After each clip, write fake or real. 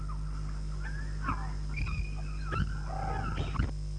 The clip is real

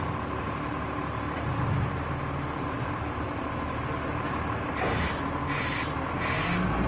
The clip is real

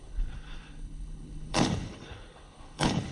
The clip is fake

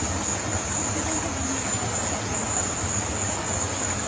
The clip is real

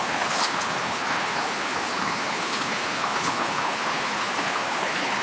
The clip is fake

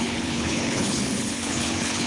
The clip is fake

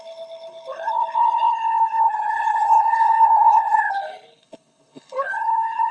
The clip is fake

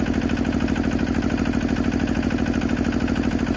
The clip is real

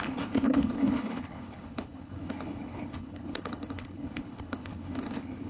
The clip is fake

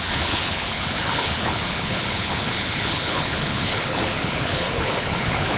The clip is fake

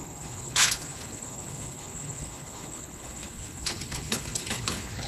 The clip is fake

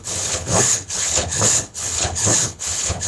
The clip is fake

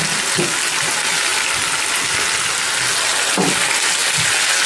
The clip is real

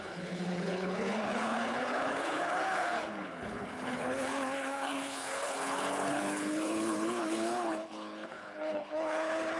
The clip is fake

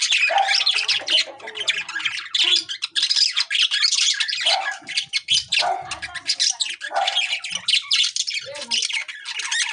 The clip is real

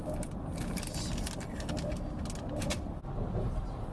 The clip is real